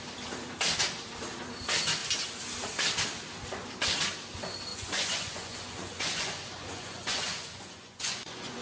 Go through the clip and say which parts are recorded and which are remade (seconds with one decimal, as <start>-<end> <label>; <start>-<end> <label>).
0.0-4.7 recorded; 4.7-8.6 remade